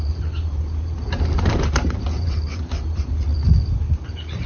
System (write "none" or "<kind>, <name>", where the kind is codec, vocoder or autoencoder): vocoder, BigVGAN v2